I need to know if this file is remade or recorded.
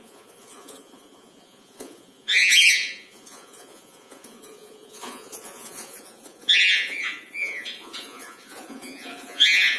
remade